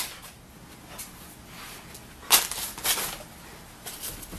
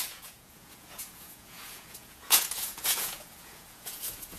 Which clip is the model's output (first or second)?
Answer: second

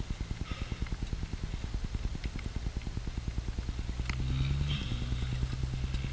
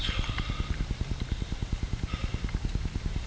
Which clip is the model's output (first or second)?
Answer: second